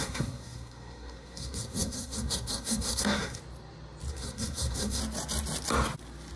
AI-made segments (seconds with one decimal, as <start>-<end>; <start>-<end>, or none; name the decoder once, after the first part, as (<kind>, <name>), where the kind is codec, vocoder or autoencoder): 0.0-3.4 (codec, SNAC); 4.1-5.0